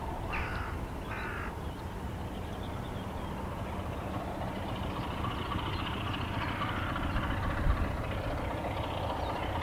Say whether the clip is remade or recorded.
recorded